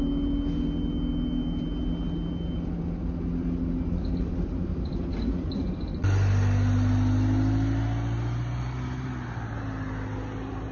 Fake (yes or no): no